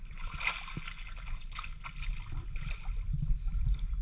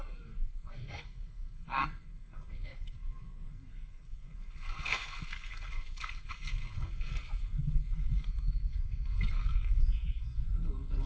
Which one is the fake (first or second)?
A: second